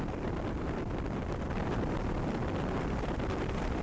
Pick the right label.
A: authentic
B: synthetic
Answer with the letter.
A